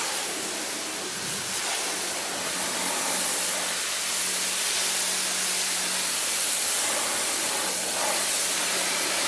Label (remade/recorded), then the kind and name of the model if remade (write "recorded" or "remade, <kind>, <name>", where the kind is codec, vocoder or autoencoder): recorded